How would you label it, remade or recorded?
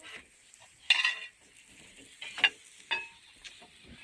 recorded